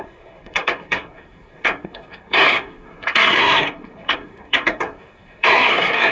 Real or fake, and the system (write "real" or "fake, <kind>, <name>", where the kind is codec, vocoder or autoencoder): fake, codec, SNAC